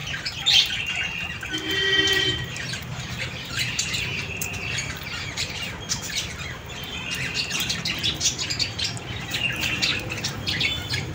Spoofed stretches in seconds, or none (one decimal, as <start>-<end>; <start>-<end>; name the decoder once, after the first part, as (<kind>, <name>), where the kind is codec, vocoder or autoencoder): 2.1-11.1 (vocoder, BigVGAN v2)